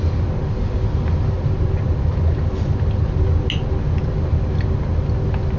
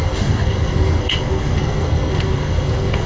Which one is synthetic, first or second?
second